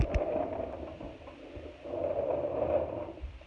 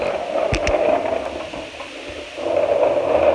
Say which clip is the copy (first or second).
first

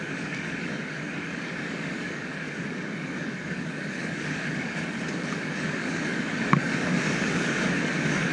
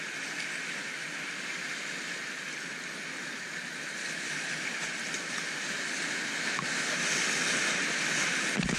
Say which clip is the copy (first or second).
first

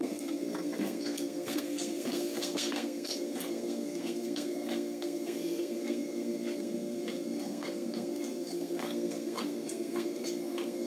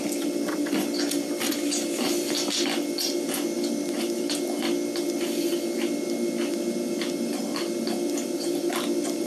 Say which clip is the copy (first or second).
first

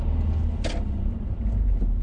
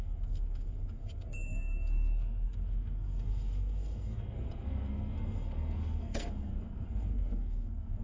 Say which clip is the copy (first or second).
second